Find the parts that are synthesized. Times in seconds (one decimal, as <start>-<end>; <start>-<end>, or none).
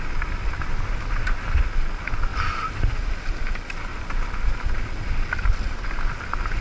2.3-2.9; 3.9-5.3